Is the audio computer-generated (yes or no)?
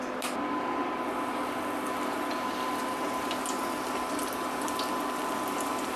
no